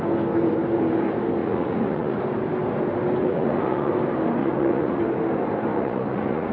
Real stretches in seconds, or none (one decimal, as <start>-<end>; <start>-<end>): 0.0-1.4; 2.2-3.2; 3.9-4.4; 5.0-5.7